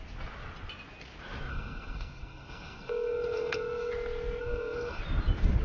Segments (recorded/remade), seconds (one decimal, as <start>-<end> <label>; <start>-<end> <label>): 0.0-1.5 recorded; 1.5-3.9 remade; 3.9-4.4 recorded; 4.4-5.0 remade; 5.0-5.6 recorded